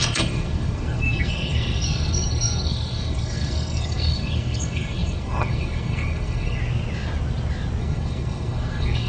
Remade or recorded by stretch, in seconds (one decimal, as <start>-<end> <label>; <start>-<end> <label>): 0.0-6.6 remade; 6.6-7.8 recorded; 7.8-9.1 remade